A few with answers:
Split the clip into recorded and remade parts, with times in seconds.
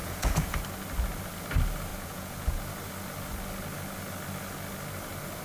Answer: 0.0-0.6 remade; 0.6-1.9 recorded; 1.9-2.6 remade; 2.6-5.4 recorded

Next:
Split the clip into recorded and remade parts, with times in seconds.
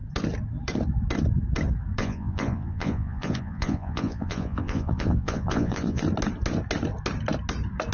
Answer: 0.0-2.0 recorded; 2.0-6.0 remade; 6.0-7.9 recorded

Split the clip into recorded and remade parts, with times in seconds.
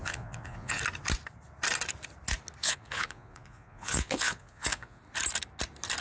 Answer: 0.0-0.8 remade; 0.8-2.6 recorded; 2.6-5.0 remade; 5.0-6.0 recorded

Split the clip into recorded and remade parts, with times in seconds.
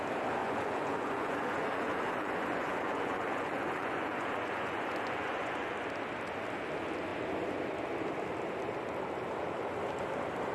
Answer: 0.0-0.4 recorded; 0.4-5.7 remade; 5.7-10.5 recorded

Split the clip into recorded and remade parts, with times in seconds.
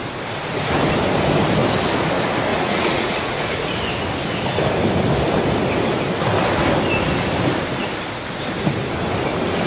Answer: 0.0-2.5 recorded; 2.5-3.7 remade; 3.7-9.7 recorded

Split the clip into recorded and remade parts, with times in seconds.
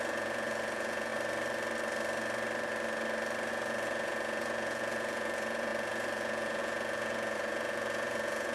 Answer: 0.0-1.1 remade; 1.1-3.5 recorded; 3.5-8.5 remade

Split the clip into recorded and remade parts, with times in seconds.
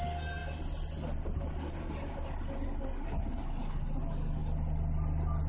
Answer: 0.0-5.5 recorded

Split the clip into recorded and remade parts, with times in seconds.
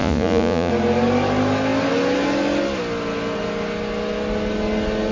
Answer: 0.0-0.7 remade; 0.7-5.1 recorded